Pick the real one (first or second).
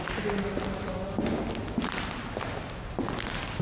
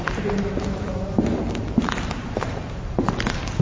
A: first